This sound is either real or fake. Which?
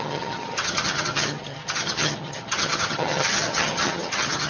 fake